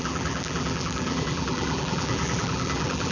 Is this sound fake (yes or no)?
yes